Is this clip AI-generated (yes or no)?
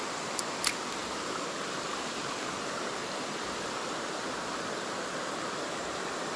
no